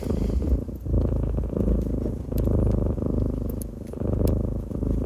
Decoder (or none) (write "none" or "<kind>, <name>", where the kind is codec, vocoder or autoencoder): none